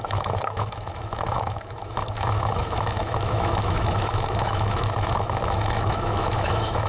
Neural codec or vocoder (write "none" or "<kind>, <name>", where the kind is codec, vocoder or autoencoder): autoencoder, DAC-VAE